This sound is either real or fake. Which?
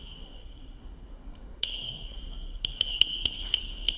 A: fake